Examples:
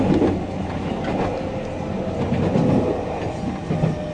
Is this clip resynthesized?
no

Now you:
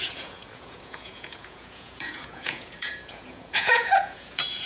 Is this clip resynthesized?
yes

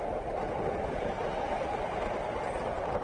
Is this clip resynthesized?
no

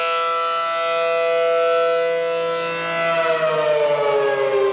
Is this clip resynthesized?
no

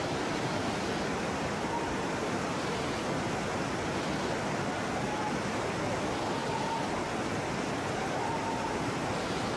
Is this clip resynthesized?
no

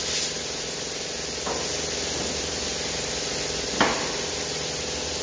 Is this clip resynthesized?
no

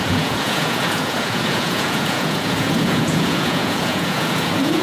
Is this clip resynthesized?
yes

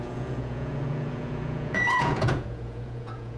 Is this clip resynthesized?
yes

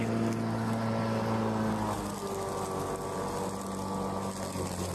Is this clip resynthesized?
no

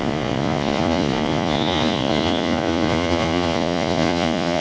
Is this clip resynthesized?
yes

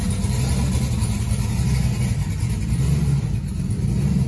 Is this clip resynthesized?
no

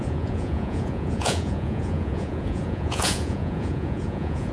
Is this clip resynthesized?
yes